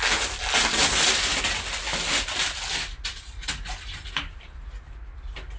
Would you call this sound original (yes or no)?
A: yes